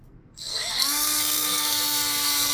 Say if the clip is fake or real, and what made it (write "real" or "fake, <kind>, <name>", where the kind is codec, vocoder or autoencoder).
fake, codec, SNAC